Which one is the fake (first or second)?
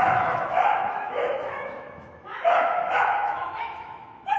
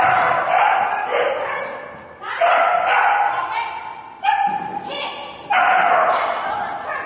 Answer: first